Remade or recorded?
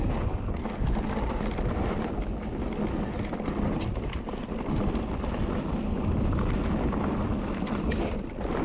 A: recorded